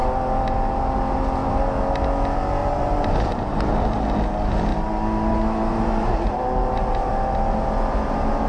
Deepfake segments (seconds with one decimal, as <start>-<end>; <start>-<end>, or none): 2.6-3.7; 5.7-7.1